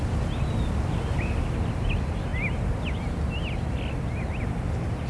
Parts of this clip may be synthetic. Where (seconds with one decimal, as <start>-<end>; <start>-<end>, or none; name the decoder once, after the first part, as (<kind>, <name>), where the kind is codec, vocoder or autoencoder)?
none

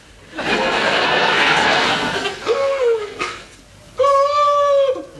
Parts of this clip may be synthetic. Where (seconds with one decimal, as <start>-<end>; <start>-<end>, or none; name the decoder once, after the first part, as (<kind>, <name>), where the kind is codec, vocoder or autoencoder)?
0.5-3.6 (codec, SNAC)

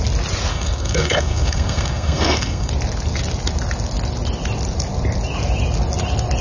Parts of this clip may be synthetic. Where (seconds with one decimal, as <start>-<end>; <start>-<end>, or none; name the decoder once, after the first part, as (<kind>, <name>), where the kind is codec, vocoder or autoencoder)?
0.5-2.7 (codec, SNAC)